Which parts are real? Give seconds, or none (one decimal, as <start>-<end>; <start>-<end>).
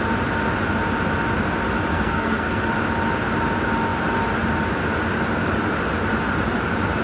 0.0-1.9; 2.7-7.0